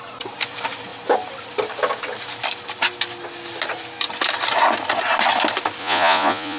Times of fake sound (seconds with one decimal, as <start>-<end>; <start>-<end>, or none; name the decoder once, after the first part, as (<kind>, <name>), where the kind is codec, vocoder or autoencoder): 5.8-6.6 (vocoder, Vocos)